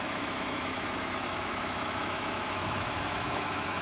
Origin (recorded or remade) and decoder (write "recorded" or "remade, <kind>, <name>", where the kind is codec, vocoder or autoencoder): remade, autoencoder, DAC-VAE